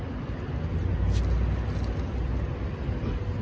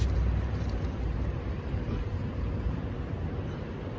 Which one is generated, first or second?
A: second